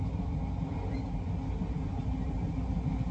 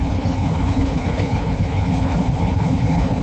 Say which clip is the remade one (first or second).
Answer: second